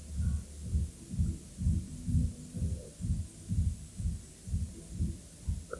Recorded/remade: recorded